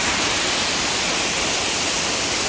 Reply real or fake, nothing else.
real